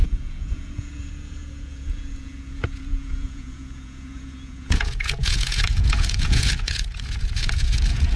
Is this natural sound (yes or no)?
no